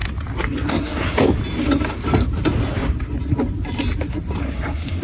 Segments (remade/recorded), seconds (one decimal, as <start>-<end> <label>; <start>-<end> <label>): 0.0-0.7 recorded; 0.7-1.4 remade; 1.4-4.4 recorded; 4.4-5.0 remade